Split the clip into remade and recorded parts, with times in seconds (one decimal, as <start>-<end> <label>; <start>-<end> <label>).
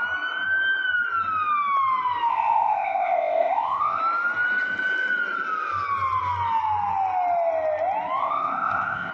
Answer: 0.0-2.3 recorded; 2.3-4.0 remade; 4.0-8.2 recorded; 8.2-9.1 remade